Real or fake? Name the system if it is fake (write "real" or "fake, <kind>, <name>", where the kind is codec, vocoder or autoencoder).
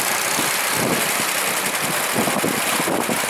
real